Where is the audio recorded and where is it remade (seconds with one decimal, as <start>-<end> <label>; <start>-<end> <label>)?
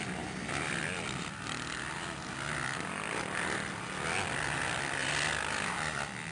0.0-5.0 recorded; 5.0-6.3 remade